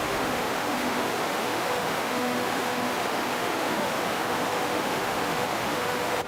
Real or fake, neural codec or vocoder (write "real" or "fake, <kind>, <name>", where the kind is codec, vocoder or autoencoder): fake, autoencoder, DAC-VAE